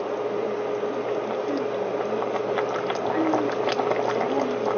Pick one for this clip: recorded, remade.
recorded